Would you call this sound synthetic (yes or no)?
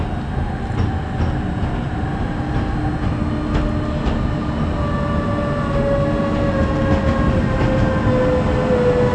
no